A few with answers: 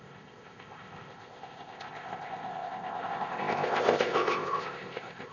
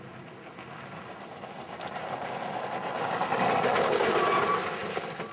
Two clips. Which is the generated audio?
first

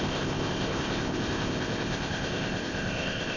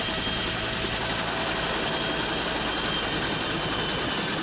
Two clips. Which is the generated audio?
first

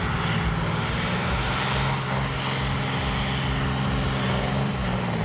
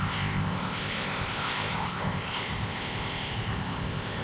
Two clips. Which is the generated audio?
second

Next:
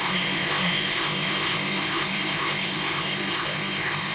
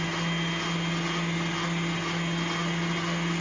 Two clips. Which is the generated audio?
first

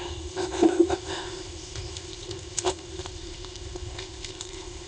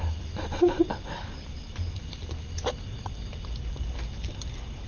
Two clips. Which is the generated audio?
first